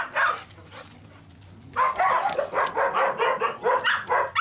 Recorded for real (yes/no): yes